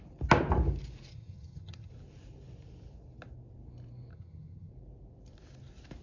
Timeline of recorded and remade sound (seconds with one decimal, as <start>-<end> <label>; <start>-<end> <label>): 0.0-1.1 recorded; 1.1-1.9 remade; 1.9-4.1 recorded; 4.1-4.7 remade; 4.7-6.0 recorded